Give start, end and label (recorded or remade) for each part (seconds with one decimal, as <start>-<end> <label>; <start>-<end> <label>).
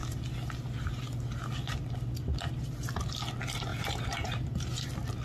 0.0-3.7 recorded; 3.7-4.8 remade; 4.8-5.2 recorded